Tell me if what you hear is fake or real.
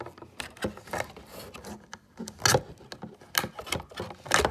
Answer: real